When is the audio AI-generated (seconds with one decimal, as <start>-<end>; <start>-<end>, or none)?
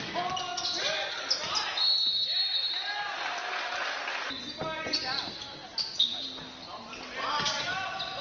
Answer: none